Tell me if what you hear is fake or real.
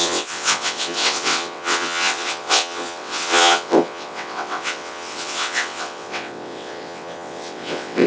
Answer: fake